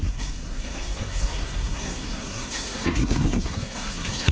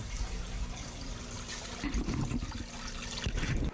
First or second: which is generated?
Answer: first